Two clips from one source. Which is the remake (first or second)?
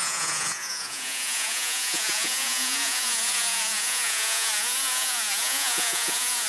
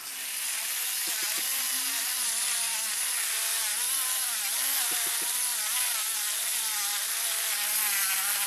first